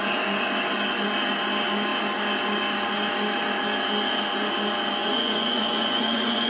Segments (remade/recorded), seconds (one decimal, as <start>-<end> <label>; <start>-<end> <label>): 0.0-5.0 recorded; 5.0-6.5 remade